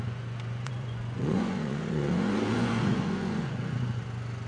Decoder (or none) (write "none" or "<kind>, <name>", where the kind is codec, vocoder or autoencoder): vocoder, Vocos